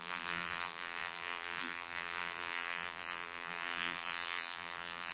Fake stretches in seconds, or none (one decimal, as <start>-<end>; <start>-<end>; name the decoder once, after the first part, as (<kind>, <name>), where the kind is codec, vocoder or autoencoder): 0.0-5.1 (vocoder, BigVGAN v2)